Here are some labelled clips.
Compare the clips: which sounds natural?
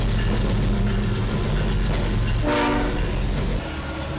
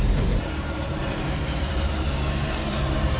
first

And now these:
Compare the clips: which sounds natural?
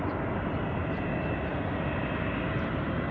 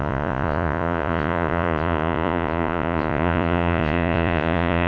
first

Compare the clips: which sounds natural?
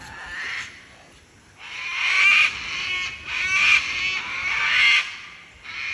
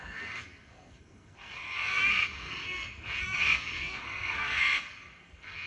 first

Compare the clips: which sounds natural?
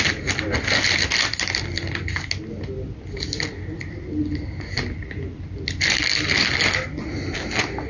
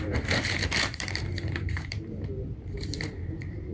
first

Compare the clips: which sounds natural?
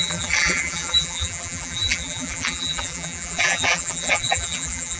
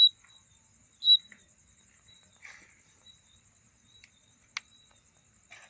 second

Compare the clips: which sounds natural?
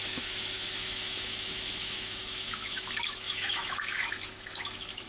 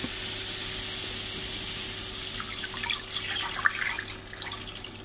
second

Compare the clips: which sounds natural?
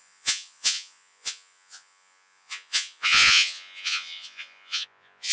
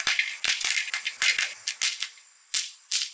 second